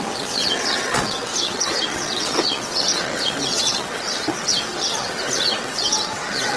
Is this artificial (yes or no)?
yes